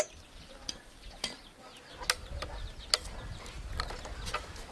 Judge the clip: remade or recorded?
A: recorded